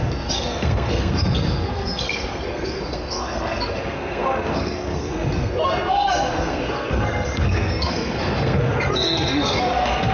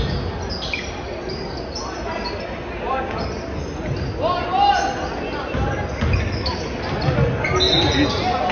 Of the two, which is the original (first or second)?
second